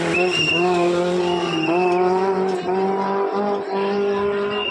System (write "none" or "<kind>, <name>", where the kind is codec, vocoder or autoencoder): none